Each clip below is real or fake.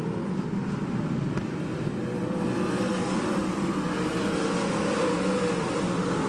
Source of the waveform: real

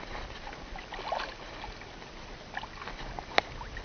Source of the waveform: real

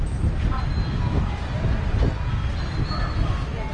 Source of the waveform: real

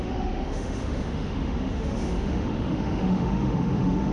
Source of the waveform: fake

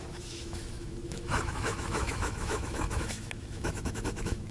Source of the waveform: fake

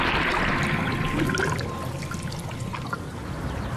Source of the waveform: real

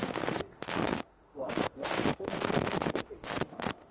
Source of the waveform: fake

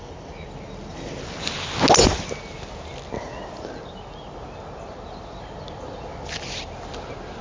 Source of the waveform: real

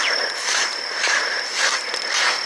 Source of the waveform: real